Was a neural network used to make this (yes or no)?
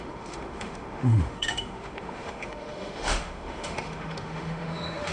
yes